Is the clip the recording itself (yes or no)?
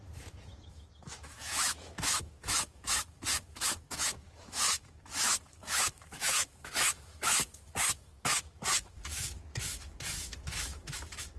no